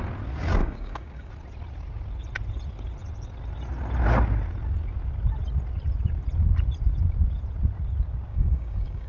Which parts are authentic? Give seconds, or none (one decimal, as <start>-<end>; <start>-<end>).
0.0-0.6; 1.3-8.3